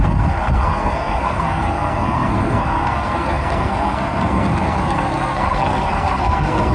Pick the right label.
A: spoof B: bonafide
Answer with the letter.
A